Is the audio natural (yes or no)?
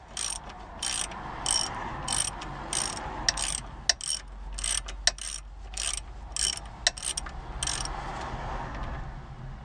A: yes